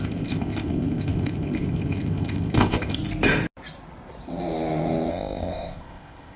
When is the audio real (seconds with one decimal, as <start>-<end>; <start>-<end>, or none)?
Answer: 3.0-5.1